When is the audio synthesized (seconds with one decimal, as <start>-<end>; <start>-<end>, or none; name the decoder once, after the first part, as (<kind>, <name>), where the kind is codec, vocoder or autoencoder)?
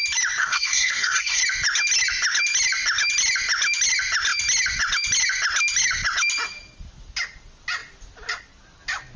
0.4-1.4 (codec, SNAC)